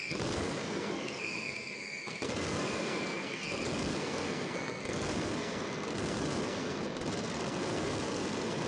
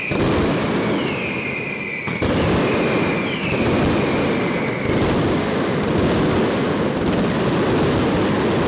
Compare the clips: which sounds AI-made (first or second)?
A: first